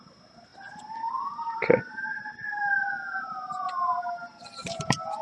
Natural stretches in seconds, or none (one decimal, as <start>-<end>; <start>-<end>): none